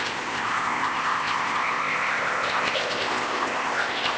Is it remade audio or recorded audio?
remade